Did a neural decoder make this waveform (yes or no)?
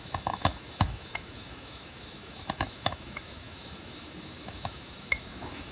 yes